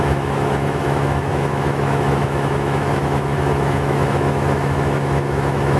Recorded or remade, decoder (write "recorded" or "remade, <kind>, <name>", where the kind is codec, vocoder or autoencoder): remade, autoencoder, DAC-VAE